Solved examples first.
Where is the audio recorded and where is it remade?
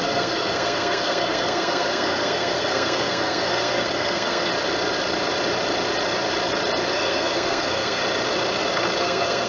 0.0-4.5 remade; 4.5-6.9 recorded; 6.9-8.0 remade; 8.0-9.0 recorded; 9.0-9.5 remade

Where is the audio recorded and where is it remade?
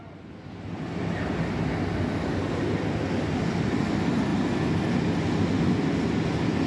0.0-6.7 recorded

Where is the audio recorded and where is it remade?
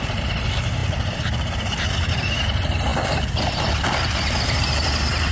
0.0-5.3 recorded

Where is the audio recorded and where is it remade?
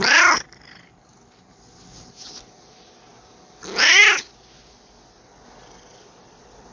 0.0-6.7 recorded